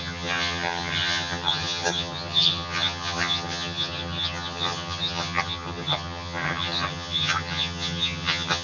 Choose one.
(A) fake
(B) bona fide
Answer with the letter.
A